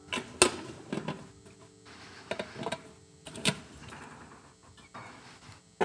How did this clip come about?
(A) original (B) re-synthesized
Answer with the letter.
A